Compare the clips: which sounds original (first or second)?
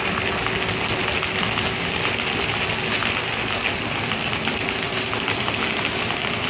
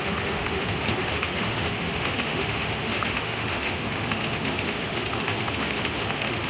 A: first